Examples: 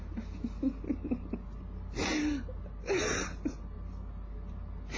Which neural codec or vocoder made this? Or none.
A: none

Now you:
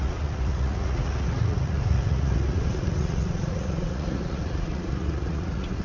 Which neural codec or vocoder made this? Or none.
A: vocoder, Vocos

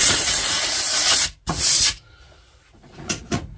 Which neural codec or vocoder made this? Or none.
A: vocoder, Vocos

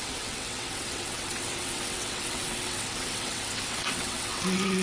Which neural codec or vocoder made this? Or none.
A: vocoder, WaveNeXt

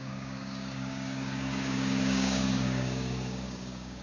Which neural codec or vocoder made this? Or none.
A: codec, DAC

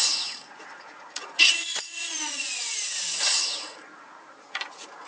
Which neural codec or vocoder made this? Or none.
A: vocoder, Vocos